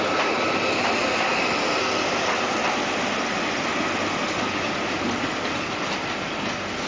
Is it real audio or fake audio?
real